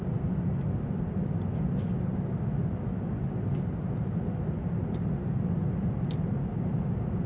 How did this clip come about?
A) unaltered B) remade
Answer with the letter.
A